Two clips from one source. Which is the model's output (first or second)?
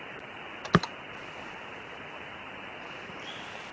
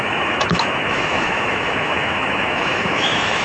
second